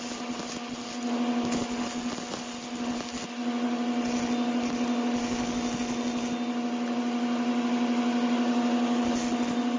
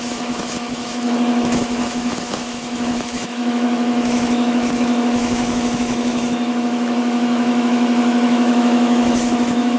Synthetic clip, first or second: second